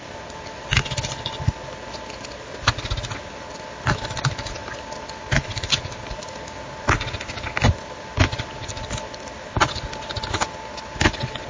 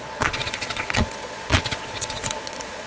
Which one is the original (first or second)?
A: first